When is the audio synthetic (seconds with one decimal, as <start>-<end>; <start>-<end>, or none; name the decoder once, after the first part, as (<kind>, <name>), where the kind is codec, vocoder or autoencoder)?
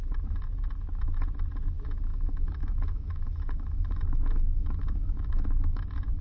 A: 2.1-5.8 (autoencoder, DAC-VAE)